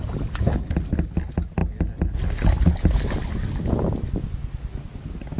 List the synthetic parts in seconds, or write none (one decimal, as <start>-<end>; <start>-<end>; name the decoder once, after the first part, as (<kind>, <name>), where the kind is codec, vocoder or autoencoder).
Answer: none